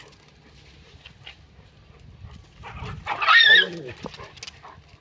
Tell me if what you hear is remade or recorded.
recorded